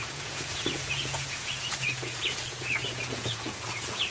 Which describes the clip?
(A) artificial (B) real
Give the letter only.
A